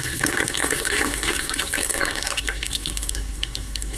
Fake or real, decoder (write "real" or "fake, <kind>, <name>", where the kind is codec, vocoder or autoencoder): fake, codec, SNAC